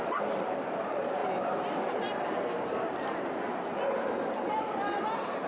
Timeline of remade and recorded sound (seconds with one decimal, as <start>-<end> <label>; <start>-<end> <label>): 0.0-1.2 remade; 1.2-4.5 recorded; 4.5-5.5 remade